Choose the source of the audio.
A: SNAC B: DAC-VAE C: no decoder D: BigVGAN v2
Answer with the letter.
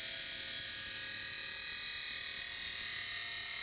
C